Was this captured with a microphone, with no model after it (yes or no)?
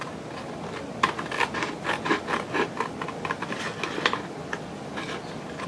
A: yes